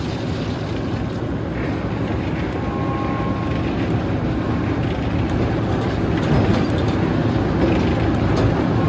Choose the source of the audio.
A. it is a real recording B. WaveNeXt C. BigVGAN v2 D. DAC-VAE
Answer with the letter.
A